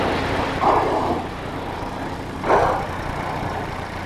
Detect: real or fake real